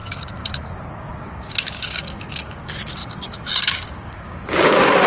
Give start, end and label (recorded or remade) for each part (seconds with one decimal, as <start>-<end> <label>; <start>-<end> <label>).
0.0-1.0 recorded; 1.0-5.1 remade